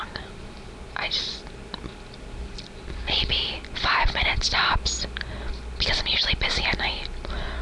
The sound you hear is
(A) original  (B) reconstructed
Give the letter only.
A